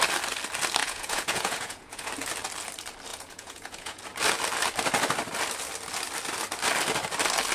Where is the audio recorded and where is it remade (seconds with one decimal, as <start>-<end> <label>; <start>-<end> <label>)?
0.0-0.8 recorded; 0.8-2.1 remade; 2.1-3.1 recorded; 3.1-4.0 remade; 4.0-7.5 recorded